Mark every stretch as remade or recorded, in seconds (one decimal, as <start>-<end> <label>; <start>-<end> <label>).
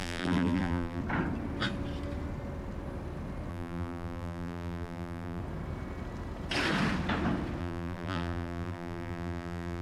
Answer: 0.0-1.0 remade; 1.0-3.5 recorded; 3.5-5.4 remade; 5.4-7.6 recorded; 7.6-9.8 remade